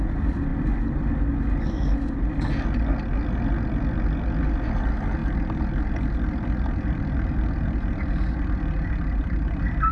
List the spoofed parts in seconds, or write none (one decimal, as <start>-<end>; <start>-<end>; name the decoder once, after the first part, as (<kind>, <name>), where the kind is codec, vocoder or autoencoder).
none